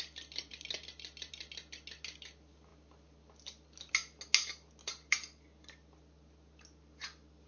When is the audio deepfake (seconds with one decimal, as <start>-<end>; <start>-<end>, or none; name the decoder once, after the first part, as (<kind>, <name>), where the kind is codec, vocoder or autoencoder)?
none